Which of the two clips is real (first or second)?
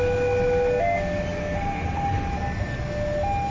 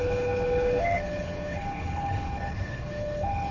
first